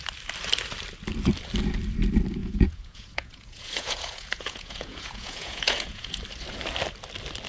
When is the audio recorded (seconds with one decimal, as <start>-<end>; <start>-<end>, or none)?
0.0-2.4; 6.2-7.5